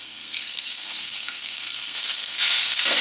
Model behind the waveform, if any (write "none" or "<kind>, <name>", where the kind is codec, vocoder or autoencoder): codec, SNAC